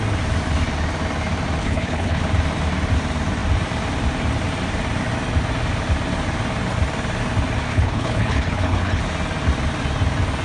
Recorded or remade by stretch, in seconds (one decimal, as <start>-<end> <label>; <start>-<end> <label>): 0.0-1.6 recorded; 1.6-2.2 remade; 2.2-7.7 recorded; 7.7-9.0 remade; 9.0-10.4 recorded